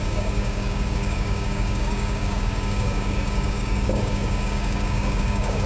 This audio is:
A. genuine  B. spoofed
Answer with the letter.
B